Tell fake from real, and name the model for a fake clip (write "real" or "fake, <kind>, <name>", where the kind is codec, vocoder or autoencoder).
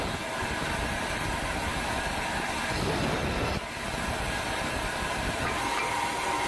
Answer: real